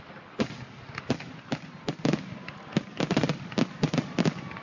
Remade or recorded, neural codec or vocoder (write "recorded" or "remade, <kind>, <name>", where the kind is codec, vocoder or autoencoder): recorded